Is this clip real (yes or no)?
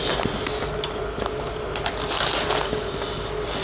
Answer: yes